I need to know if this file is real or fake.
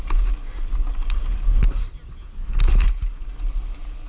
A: real